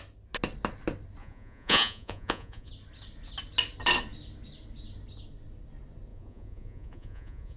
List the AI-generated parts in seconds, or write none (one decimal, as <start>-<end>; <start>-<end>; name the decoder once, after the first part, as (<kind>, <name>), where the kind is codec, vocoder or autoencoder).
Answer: 1.2-2.7 (vocoder, Vocos); 6.1-7.6